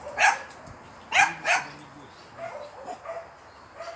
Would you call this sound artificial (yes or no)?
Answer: no